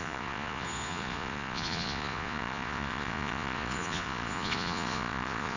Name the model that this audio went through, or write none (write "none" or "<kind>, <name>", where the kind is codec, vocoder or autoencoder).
vocoder, Vocos